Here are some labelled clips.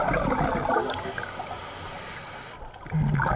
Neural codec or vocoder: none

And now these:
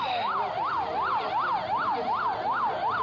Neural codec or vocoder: none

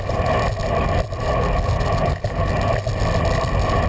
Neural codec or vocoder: none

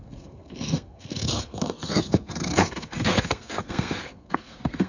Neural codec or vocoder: codec, SNAC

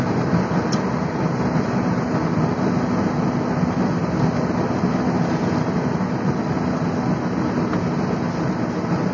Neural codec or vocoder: none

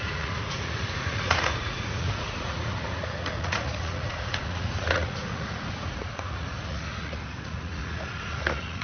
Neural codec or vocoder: vocoder, Vocos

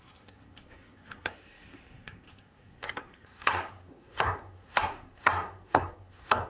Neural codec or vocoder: codec, SNAC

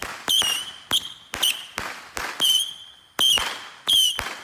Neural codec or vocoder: none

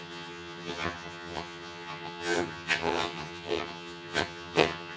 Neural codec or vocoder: vocoder, HiFi-GAN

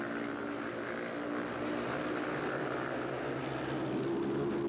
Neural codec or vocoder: none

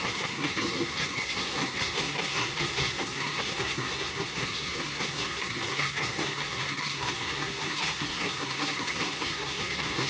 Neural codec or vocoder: codec, SNAC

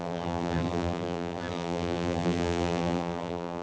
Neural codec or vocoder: vocoder, BigVGAN v2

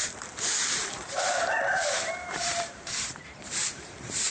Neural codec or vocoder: vocoder, BigVGAN v2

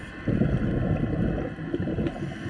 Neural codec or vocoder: none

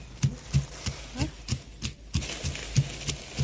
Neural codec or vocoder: none